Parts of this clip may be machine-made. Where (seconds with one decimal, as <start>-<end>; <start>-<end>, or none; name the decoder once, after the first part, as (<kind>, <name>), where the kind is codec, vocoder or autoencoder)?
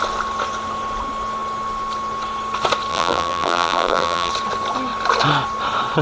2.9-4.3 (vocoder, BigVGAN v2)